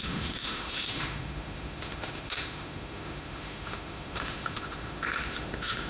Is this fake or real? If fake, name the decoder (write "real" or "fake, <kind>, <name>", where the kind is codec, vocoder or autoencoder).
fake, autoencoder, DAC-VAE